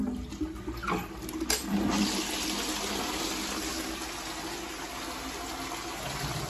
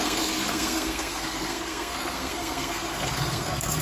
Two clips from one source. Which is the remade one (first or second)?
second